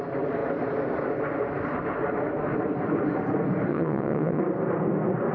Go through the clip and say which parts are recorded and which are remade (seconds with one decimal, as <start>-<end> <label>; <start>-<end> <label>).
0.0-3.7 recorded; 3.7-4.4 remade; 4.4-5.3 recorded